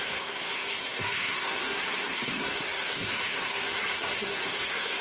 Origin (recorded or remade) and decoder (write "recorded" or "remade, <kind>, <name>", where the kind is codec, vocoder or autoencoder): remade, codec, SNAC